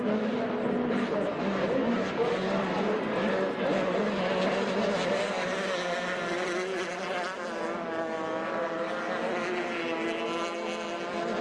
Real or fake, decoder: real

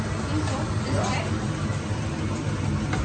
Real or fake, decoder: real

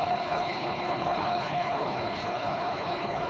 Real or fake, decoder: fake, codec, HILCodec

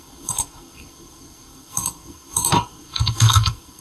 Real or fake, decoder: fake, codec, SNAC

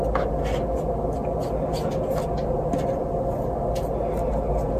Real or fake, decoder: real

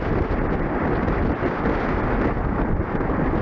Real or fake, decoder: real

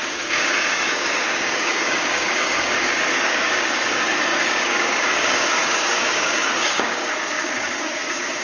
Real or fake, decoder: fake, codec, DAC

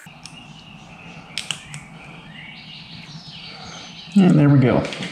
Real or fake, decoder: real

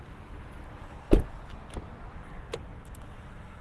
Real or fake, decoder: real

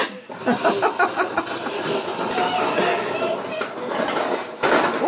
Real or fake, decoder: real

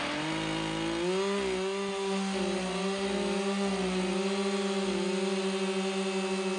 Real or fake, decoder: real